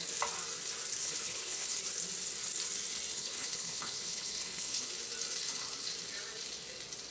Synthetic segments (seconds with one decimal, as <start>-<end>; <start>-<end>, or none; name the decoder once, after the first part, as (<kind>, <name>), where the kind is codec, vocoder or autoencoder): 1.0-1.8 (codec, HILCodec); 3.1-4.9

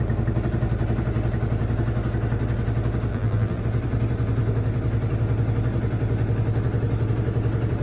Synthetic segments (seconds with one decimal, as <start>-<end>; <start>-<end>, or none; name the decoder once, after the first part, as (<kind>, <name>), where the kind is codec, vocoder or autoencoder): 3.1-3.6 (vocoder, BigVGAN v2)

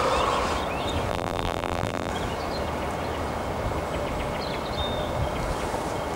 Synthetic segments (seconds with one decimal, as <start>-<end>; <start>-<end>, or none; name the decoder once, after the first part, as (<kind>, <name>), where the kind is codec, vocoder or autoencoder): 1.1-2.1 (vocoder, BigVGAN v2)

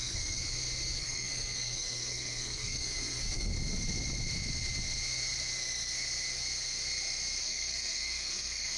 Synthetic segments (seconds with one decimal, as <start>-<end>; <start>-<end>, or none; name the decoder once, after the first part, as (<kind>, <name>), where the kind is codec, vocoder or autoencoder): 0.0-0.4 (codec, SNAC); 1.0-3.5; 7.4-8.8

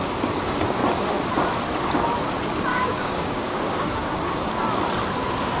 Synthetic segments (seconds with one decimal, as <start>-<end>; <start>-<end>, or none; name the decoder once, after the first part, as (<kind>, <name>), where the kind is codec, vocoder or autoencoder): 2.7-4.5 (codec, DAC)

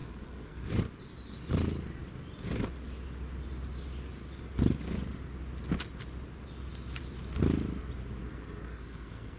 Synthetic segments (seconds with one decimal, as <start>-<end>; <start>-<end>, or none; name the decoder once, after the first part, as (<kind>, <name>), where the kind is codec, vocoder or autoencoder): 0.0-0.7 (codec, SNAC); 8.2-9.4